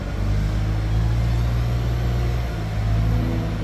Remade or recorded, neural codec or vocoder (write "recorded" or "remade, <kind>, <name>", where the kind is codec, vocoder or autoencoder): recorded